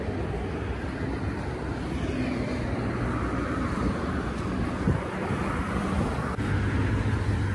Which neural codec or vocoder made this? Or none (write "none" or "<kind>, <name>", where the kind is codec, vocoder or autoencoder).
none